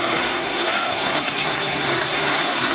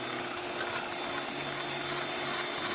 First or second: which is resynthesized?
first